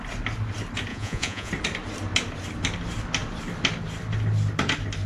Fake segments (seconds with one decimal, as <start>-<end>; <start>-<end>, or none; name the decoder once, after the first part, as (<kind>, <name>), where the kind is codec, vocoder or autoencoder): 0.9-1.5 (vocoder, Vocos)